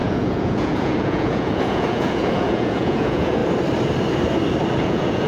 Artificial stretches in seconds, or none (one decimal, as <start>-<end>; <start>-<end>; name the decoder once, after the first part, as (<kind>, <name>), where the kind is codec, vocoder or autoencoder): 0.0-3.4 (vocoder, Vocos); 4.8-5.3